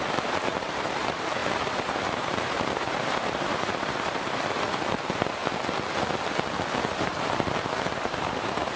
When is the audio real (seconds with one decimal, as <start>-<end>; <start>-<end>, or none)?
5.4-6.9